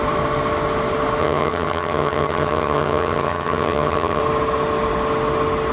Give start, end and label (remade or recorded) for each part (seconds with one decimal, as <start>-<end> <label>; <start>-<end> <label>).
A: 0.0-1.2 recorded; 1.2-4.2 remade; 4.2-5.7 recorded